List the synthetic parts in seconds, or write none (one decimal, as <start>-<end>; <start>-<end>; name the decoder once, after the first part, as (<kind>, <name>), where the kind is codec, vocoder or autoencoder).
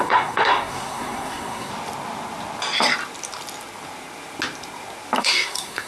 0.0-1.7 (codec, SNAC); 5.2-5.9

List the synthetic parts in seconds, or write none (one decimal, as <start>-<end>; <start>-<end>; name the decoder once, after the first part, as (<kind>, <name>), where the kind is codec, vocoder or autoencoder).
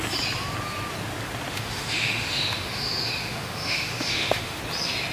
1.5-4.6 (autoencoder, DAC-VAE)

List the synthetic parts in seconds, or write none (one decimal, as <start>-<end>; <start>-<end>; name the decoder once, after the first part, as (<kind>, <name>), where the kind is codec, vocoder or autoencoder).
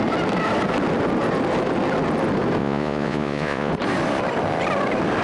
2.6-3.7 (vocoder, Vocos)